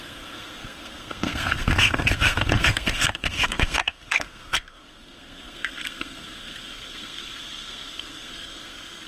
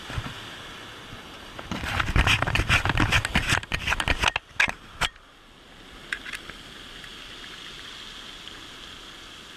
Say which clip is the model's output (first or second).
first